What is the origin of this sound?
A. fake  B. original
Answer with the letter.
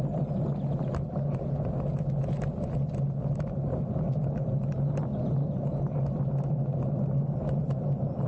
B